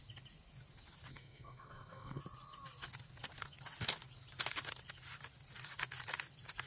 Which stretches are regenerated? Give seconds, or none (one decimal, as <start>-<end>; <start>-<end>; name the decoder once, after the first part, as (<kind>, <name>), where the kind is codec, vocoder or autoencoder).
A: 1.1-2.2 (codec, SNAC)